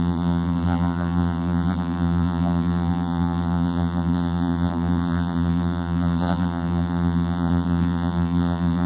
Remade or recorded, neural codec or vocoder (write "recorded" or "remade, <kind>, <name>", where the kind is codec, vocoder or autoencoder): remade, vocoder, BigVGAN v2